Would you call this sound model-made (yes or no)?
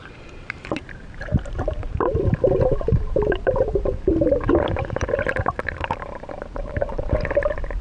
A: yes